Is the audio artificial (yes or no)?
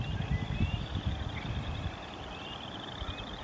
no